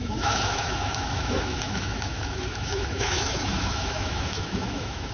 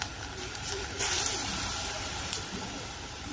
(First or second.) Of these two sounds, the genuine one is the second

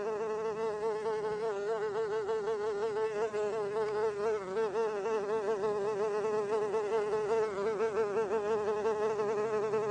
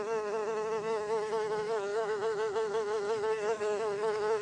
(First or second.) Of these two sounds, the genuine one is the first